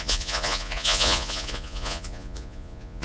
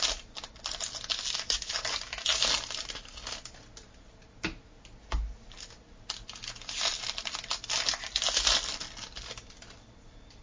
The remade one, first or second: first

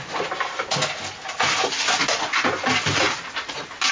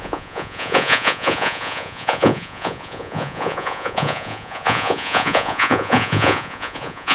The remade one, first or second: second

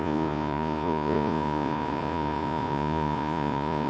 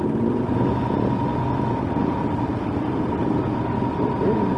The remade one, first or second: first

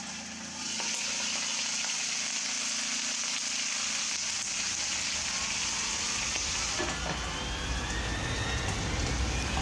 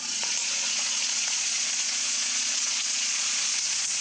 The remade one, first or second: second